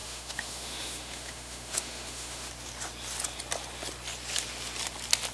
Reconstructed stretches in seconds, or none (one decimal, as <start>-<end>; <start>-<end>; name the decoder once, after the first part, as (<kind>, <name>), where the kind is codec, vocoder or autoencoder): 0.0-2.5 (autoencoder, DAC-VAE)